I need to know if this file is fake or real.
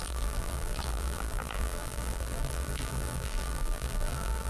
fake